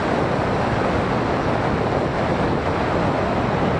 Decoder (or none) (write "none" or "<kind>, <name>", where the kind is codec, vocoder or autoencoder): none